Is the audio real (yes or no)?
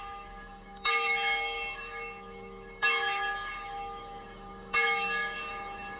no